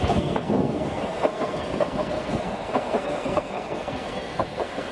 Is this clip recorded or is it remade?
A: remade